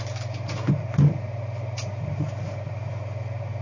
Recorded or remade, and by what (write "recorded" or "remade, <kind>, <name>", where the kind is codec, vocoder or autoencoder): recorded